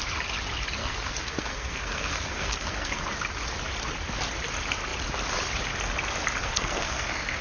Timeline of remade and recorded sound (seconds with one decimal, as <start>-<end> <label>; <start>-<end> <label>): 0.0-0.8 recorded; 0.8-3.0 remade; 3.0-6.4 recorded; 6.4-7.4 remade